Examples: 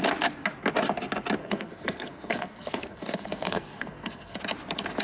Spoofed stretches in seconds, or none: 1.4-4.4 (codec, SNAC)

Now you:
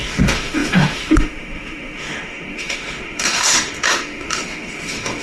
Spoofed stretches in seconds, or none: 0.0-5.2 (autoencoder, DAC-VAE)